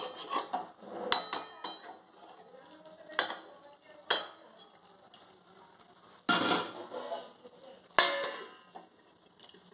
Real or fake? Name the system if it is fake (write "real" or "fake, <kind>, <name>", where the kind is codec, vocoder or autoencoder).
real